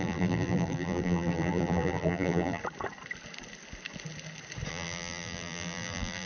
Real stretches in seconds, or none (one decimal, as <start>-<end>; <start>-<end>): 2.6-4.7